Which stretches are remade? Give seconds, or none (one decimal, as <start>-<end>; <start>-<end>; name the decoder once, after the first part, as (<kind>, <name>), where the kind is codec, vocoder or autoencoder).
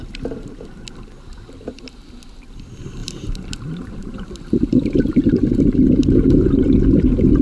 3.0-5.0 (vocoder, BigVGAN v2)